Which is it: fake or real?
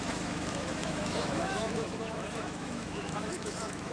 fake